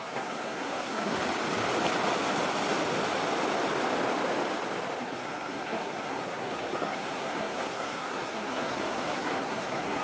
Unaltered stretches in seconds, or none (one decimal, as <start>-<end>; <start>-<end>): 1.2-5.0